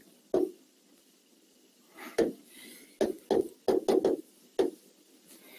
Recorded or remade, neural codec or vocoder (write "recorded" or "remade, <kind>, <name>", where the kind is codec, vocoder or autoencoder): recorded